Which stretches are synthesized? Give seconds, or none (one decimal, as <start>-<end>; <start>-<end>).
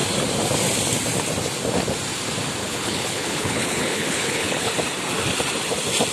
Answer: 2.6-4.7